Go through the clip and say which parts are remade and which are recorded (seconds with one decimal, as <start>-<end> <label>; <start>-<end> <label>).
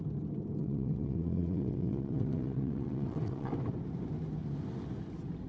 0.0-0.6 recorded; 0.6-3.5 remade; 3.5-5.5 recorded